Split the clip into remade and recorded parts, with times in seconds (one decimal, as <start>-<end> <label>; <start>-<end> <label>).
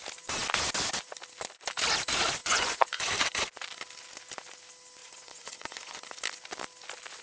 0.0-2.4 recorded; 2.4-3.1 remade; 3.1-5.0 recorded; 5.0-6.0 remade; 6.0-7.2 recorded